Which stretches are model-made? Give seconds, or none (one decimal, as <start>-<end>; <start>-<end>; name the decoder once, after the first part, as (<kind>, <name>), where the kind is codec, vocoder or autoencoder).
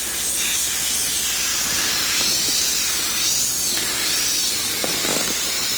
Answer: 4.6-5.2 (codec, DAC)